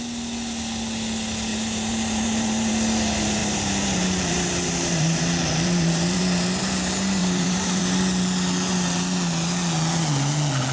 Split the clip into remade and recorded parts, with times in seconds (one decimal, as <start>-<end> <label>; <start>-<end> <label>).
0.0-1.5 recorded; 1.5-2.7 remade; 2.7-3.4 recorded; 3.4-6.2 remade; 6.2-7.2 recorded; 7.2-7.8 remade; 7.8-10.7 recorded